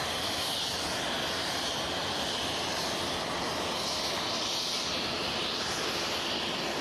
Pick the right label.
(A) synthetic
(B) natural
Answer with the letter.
B